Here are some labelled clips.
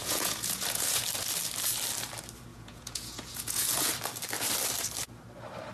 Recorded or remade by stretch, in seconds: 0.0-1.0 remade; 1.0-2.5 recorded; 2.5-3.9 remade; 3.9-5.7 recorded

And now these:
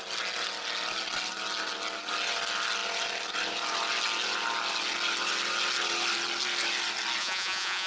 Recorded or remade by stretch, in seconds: 0.0-7.2 recorded; 7.2-7.9 remade

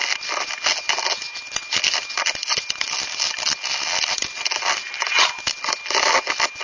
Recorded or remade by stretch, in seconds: 0.0-6.6 recorded

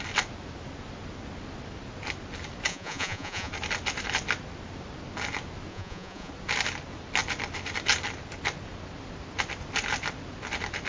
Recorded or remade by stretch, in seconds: 0.0-2.7 recorded; 2.7-3.5 remade; 3.5-5.7 recorded; 5.7-6.3 remade; 6.3-10.9 recorded

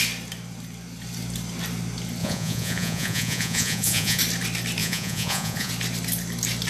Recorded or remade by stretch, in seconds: 0.0-2.2 recorded; 2.2-4.2 remade; 4.2-4.8 recorded; 4.8-5.7 remade; 5.7-6.7 recorded

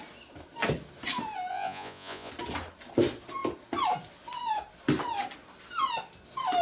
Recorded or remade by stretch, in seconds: 0.0-1.5 recorded; 1.5-2.3 remade; 2.3-6.6 recorded